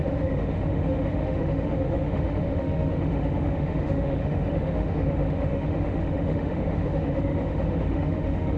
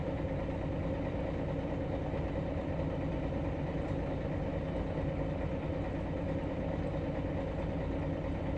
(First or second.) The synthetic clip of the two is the first